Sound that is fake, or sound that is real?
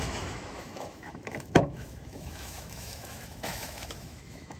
fake